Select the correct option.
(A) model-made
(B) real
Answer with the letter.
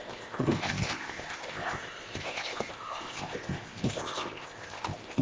A